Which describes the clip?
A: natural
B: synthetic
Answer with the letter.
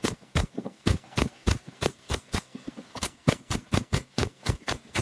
B